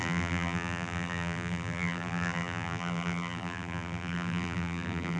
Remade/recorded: remade